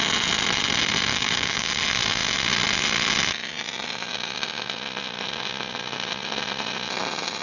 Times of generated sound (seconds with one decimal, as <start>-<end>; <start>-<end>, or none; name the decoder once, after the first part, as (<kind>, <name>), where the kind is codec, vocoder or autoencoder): 1.1-1.8 (codec, DAC)